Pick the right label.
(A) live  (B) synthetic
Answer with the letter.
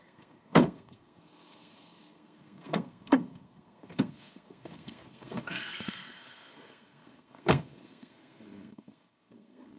B